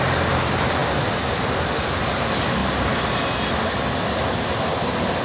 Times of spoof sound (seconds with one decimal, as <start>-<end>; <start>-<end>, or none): 2.6-3.3